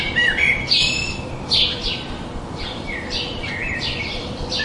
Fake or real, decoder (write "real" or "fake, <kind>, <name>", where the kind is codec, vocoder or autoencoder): fake, vocoder, BigVGAN v2